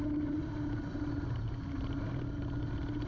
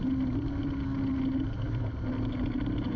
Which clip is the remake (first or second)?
first